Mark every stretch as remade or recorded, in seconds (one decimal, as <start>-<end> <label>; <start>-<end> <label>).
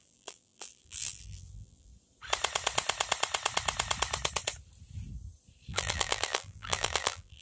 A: 0.0-1.9 remade; 1.9-5.7 recorded; 5.7-7.4 remade